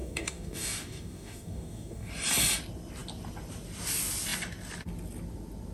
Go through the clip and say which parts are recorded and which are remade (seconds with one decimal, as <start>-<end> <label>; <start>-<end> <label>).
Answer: 0.0-2.1 remade; 2.1-5.7 recorded

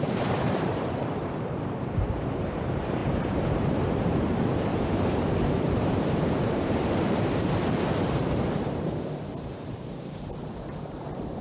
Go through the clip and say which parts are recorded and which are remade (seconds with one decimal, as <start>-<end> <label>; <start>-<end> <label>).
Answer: 0.0-11.4 remade

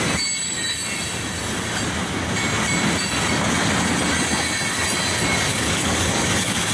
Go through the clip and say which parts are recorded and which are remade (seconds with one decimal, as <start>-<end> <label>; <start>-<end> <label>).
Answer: 0.0-5.5 recorded; 5.5-6.7 remade

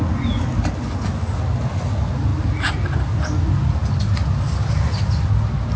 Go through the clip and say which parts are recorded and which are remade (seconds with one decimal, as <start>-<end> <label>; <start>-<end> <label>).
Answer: 0.0-5.8 recorded

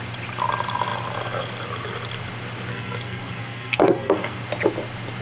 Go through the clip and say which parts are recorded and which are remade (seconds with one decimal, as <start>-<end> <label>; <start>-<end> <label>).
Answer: 0.0-2.7 recorded; 2.7-4.4 remade; 4.4-5.2 recorded

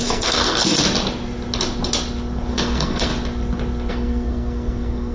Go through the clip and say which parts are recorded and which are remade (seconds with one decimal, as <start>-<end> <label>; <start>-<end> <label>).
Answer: 0.0-0.7 remade; 0.7-2.5 recorded; 2.5-3.1 remade; 3.1-3.9 recorded; 3.9-5.1 remade

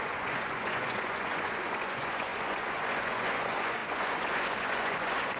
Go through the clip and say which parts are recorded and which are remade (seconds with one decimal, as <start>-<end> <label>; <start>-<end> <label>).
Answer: 0.0-5.4 remade

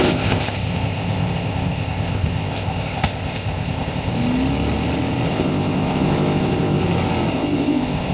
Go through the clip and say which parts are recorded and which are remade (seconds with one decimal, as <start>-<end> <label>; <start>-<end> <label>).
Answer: 0.0-4.1 remade; 4.1-5.3 recorded; 5.3-6.8 remade; 6.8-7.3 recorded; 7.3-8.1 remade